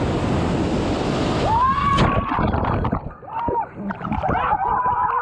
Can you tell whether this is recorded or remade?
recorded